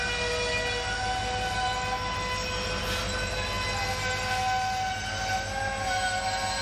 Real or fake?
real